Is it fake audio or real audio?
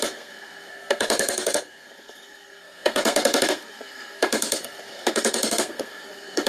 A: fake